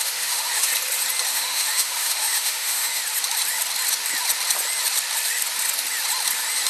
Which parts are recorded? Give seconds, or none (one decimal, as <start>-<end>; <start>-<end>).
0.7-1.3; 3.0-6.7